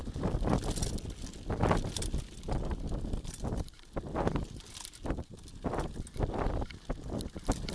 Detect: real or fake real